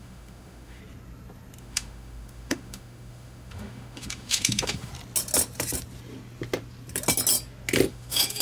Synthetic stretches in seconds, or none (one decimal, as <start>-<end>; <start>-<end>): 0.0-0.8; 1.6-4.9; 7.9-8.4